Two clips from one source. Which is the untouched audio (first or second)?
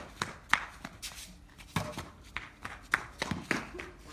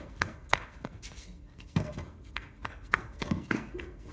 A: first